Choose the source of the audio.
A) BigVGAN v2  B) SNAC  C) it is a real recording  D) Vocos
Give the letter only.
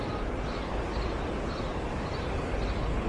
C